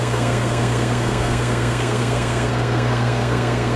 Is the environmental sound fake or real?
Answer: fake